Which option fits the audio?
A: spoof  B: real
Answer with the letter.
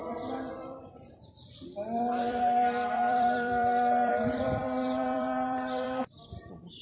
A